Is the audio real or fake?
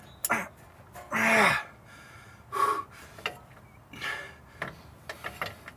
real